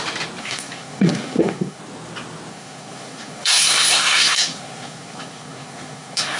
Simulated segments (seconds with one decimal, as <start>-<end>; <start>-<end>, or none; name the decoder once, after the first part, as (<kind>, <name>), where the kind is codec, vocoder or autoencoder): 0.4-1.8 (codec, SNAC); 2.5-6.4